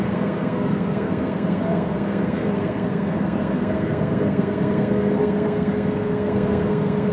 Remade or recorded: remade